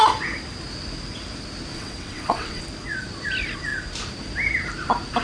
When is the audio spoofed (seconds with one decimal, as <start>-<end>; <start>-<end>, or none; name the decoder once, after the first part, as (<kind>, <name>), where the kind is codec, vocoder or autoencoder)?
1.7-2.6 (vocoder, WaveNeXt)